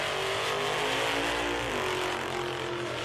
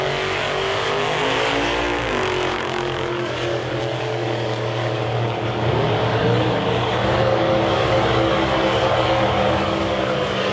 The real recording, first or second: first